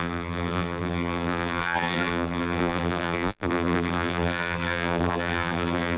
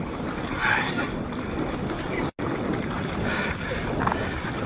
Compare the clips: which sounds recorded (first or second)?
second